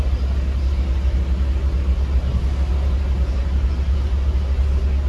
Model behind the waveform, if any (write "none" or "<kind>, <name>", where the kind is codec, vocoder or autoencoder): none